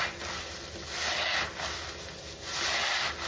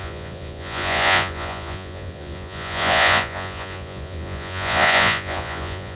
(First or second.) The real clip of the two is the first